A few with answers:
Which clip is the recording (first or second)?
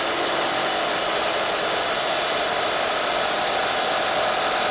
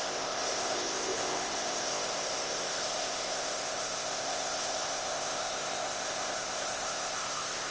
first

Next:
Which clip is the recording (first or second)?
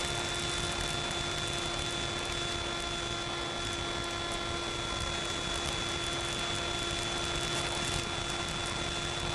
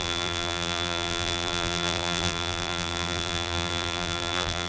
first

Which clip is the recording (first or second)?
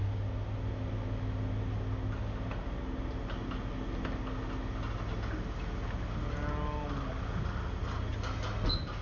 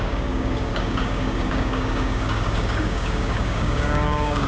first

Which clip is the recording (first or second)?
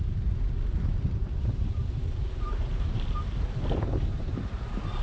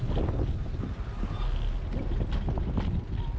second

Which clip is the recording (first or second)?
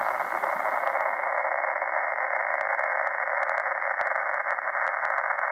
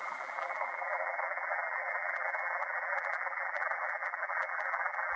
first